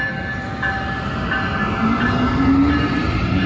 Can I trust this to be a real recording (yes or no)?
yes